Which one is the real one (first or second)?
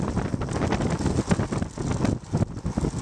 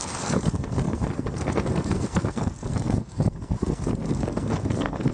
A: first